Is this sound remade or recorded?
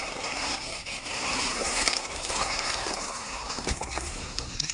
remade